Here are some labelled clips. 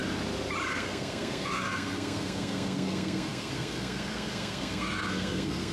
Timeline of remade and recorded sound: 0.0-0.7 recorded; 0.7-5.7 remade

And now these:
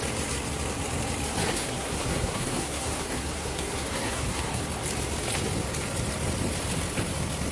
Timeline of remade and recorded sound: 0.0-1.5 recorded; 1.5-4.6 remade; 4.6-7.5 recorded

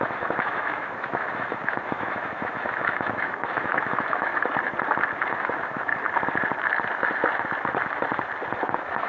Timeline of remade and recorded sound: 0.0-4.3 remade; 4.3-5.3 recorded; 5.3-5.9 remade; 5.9-8.6 recorded; 8.6-9.1 remade

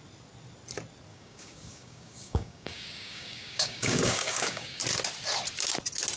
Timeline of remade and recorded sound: 0.0-1.1 recorded; 1.1-4.8 remade; 4.8-6.2 recorded

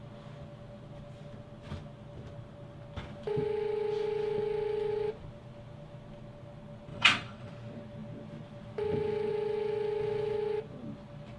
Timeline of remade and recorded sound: 0.0-6.9 recorded; 6.9-7.5 remade; 7.5-11.4 recorded